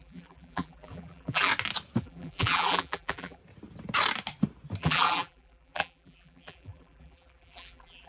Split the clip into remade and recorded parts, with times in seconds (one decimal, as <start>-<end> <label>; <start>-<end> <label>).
0.0-1.5 remade; 1.5-2.0 recorded; 2.0-3.4 remade; 3.4-4.8 recorded; 4.8-8.1 remade